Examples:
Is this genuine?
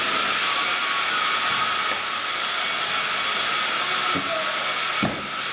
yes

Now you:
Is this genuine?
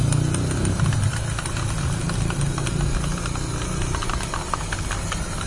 yes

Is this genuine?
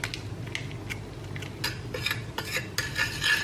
yes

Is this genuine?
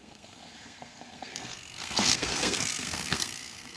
no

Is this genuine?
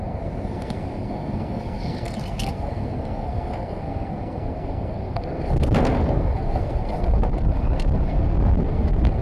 no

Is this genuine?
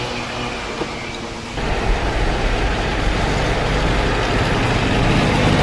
yes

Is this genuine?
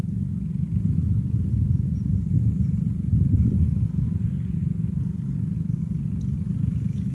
yes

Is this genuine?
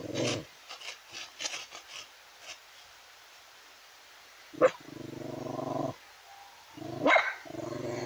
yes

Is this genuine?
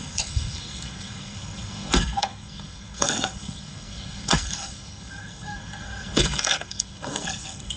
no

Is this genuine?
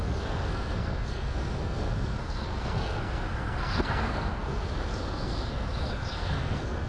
no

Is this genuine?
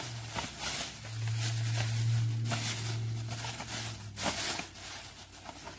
yes